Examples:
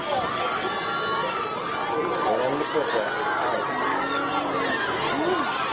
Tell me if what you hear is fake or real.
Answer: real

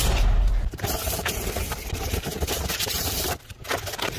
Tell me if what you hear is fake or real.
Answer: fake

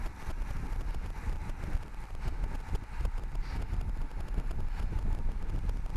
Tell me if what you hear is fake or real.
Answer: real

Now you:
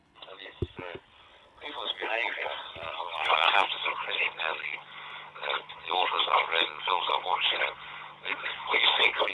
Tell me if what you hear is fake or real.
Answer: fake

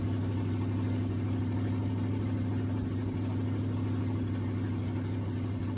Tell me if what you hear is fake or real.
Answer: real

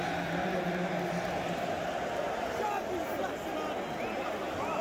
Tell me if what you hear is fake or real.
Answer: real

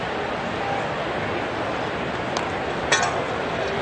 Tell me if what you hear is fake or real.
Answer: real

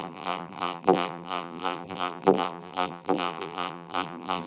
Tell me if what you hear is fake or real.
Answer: fake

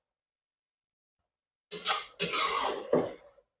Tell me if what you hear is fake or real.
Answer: real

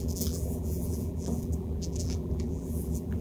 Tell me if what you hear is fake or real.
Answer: fake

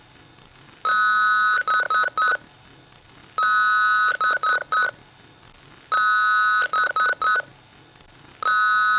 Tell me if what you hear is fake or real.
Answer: real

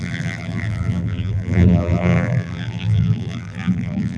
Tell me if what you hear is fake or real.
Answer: fake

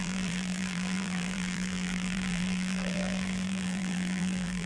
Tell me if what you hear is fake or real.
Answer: fake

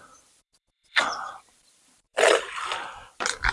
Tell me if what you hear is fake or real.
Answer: fake